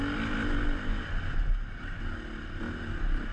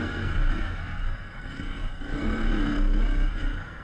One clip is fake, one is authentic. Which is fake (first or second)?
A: second